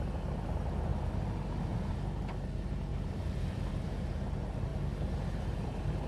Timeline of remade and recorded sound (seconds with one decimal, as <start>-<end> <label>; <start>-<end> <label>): 0.0-2.9 recorded; 2.9-3.7 remade; 3.7-6.1 recorded